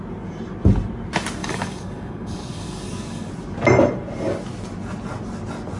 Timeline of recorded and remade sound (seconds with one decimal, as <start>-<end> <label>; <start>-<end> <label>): 0.0-1.4 recorded; 1.4-3.3 remade; 3.3-5.8 recorded

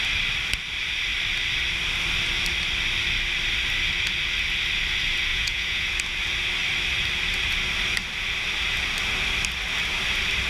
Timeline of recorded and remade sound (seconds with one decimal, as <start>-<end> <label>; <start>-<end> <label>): 0.0-5.3 recorded; 5.3-5.9 remade; 5.9-10.5 recorded

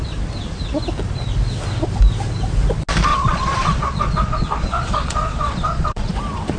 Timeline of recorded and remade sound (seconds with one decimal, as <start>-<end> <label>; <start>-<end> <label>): 0.0-3.1 recorded; 3.1-6.1 remade; 6.1-6.6 recorded